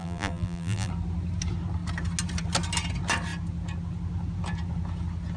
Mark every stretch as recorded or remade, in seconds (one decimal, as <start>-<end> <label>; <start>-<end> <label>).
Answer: 0.0-0.9 remade; 0.9-5.4 recorded